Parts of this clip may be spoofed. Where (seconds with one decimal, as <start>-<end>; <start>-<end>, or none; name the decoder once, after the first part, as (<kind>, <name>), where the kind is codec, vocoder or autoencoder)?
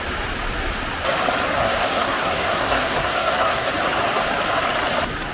1.6-3.7 (codec, SNAC)